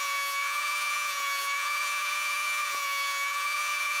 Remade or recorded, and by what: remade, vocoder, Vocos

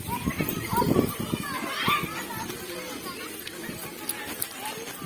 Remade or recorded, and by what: recorded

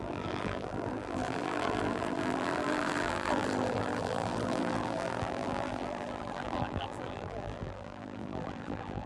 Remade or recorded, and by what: remade, vocoder, BigVGAN v2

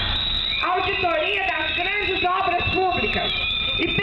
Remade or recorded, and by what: recorded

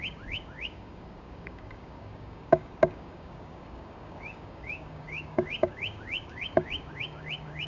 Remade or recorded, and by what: remade, codec, DAC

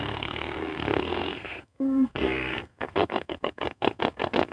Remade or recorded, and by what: remade, codec, SNAC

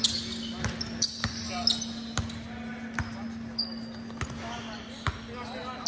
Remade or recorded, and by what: recorded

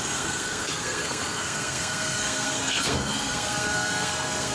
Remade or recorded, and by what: remade, codec, SNAC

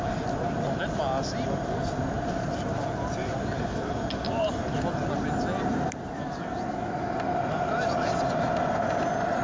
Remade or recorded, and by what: recorded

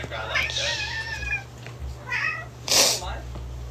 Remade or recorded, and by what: recorded